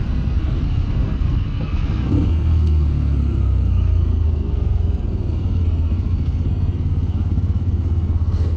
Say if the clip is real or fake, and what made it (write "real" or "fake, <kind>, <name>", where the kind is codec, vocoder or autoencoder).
fake, codec, SNAC